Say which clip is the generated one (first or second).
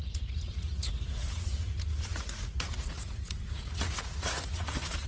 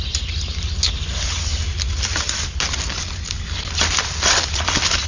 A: first